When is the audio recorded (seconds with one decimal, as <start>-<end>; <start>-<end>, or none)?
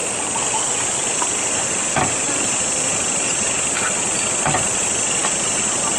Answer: 0.0-0.8